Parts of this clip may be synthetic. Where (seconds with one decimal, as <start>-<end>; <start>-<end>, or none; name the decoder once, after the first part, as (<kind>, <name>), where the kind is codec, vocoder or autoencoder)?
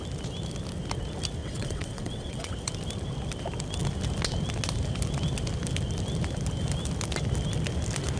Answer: 1.4-2.5 (vocoder, WaveNeXt)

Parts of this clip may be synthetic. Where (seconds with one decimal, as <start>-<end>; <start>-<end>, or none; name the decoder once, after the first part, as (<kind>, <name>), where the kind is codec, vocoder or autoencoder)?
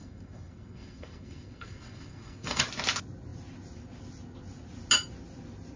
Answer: 0.0-2.6 (codec, SNAC)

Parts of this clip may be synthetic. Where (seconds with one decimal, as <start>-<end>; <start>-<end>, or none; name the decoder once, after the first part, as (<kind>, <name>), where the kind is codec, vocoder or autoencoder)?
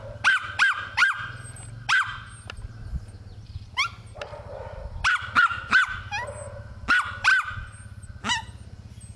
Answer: none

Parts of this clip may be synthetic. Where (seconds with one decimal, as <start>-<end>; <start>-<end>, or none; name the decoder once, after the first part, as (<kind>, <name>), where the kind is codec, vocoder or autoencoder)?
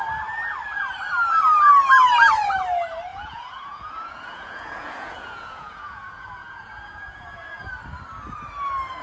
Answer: 3.1-7.7 (vocoder, Vocos)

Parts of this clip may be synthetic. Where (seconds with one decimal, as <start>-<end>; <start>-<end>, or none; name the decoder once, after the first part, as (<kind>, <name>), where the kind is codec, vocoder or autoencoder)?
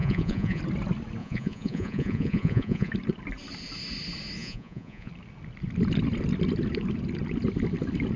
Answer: 0.0-0.6 (vocoder, Vocos); 1.2-2.9; 4.4-5.1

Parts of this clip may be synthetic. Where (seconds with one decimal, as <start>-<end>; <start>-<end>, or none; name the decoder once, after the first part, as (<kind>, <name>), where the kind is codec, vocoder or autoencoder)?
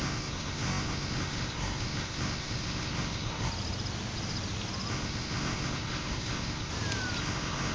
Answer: 0.0-3.5 (codec, SNAC); 4.9-6.7; 7.2-7.7